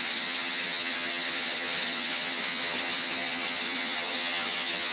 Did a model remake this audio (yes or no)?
yes